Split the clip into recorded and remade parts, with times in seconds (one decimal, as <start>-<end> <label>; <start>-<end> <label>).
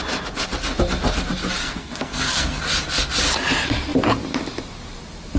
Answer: 0.0-1.6 recorded; 1.6-2.6 remade; 2.6-5.4 recorded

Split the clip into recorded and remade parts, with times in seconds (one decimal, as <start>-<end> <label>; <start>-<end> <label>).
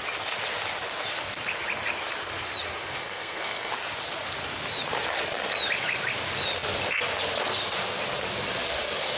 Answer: 0.0-3.0 recorded; 3.0-3.7 remade; 3.7-9.2 recorded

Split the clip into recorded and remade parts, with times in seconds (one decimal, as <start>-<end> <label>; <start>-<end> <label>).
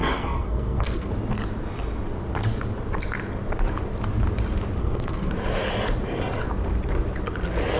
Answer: 0.0-1.1 remade; 1.1-4.8 recorded; 4.8-5.3 remade; 5.3-7.8 recorded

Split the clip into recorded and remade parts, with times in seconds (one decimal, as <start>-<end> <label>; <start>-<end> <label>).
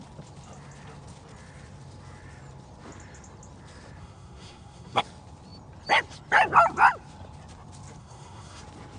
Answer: 0.0-4.0 recorded; 4.0-5.0 remade; 5.0-8.0 recorded; 8.0-8.6 remade; 8.6-9.0 recorded